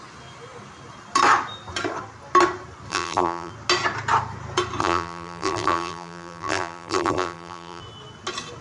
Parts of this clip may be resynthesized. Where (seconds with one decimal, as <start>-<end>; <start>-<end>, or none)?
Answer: 2.9-3.5; 4.8-7.8

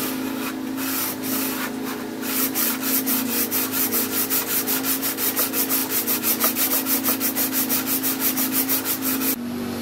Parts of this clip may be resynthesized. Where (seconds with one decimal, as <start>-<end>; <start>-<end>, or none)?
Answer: 0.0-9.8

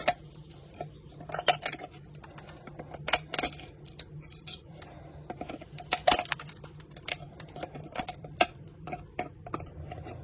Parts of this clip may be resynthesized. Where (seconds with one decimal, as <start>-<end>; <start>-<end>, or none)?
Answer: 4.6-9.5